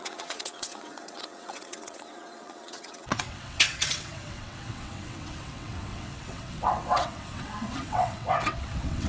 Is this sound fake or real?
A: fake